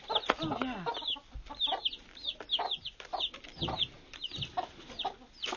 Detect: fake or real real